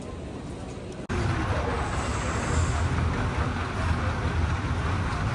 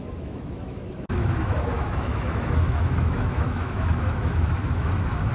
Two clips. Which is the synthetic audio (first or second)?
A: second